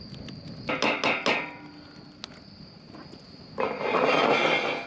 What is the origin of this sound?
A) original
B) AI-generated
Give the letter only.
A